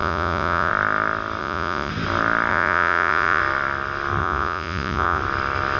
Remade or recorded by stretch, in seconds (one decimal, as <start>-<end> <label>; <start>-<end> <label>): 0.0-0.7 remade; 0.7-1.4 recorded; 1.4-1.9 remade; 1.9-2.5 recorded; 2.5-3.4 remade; 3.4-4.2 recorded; 4.2-5.2 remade; 5.2-5.8 recorded